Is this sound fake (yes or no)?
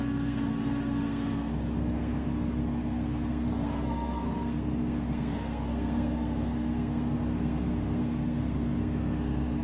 yes